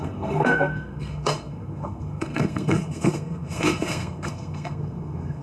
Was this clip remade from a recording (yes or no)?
yes